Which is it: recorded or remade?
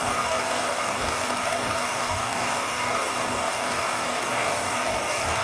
remade